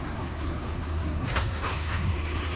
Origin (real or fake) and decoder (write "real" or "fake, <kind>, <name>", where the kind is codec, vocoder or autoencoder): fake, codec, SNAC